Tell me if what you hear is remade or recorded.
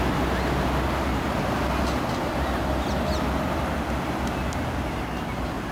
recorded